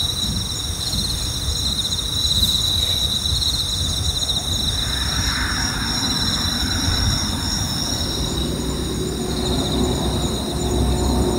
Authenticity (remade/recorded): recorded